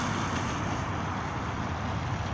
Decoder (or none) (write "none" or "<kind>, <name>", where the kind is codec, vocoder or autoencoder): none